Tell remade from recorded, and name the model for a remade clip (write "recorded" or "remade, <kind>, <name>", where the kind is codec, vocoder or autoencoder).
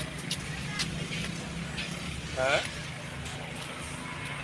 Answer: recorded